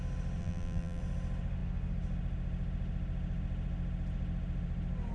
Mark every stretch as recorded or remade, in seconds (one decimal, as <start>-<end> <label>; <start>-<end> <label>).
0.0-0.4 recorded; 0.4-1.0 remade; 1.0-5.1 recorded